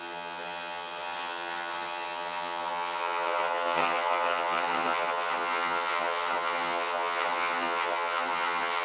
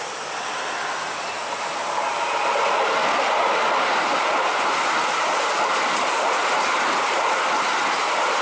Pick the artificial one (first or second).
first